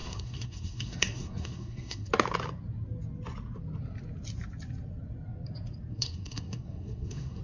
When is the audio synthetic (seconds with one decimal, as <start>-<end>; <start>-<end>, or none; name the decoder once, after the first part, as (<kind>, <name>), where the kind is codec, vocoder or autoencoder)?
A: 0.0-2.1 (codec, SNAC); 5.9-7.4